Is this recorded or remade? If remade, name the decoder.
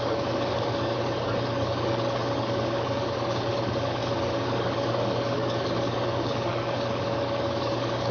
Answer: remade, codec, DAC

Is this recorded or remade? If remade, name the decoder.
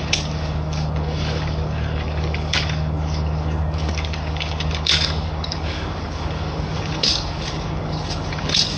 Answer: remade, codec, DAC